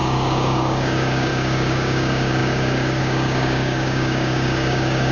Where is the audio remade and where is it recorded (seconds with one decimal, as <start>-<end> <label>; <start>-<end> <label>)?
0.0-5.1 remade